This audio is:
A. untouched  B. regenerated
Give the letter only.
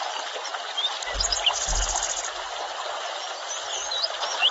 A